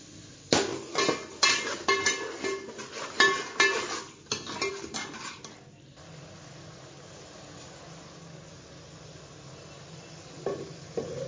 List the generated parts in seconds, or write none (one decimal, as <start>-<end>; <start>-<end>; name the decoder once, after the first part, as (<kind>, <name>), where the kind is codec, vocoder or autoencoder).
none

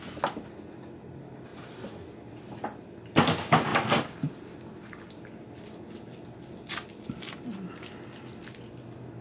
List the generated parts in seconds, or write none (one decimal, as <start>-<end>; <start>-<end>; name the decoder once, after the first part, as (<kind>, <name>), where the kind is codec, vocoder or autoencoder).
none

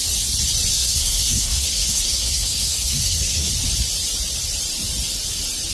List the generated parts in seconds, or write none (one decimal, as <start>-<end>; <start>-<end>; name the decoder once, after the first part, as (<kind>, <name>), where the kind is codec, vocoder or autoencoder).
0.7-3.5 (codec, SNAC)